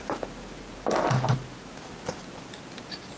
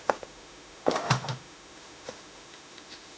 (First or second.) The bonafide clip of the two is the first